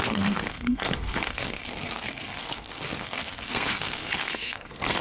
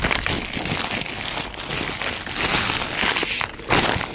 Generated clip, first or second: first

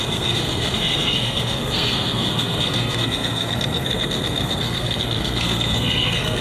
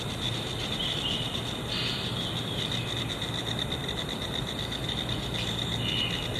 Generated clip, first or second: first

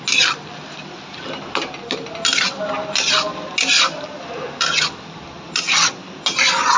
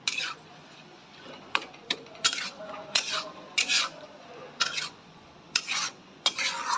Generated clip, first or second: second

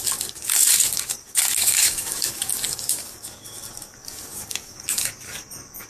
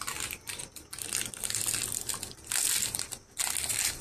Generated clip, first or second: first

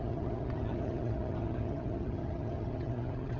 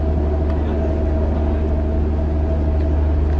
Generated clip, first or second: first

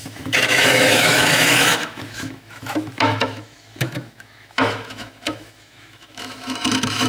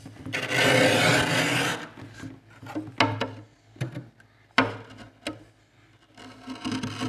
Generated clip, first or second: first